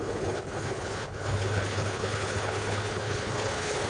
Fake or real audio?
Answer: fake